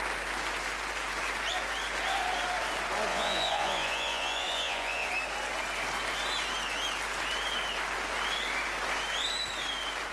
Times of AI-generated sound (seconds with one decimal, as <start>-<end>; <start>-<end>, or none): 3.1-5.1